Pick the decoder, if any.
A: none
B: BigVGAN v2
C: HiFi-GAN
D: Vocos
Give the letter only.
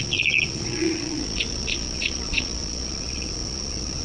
D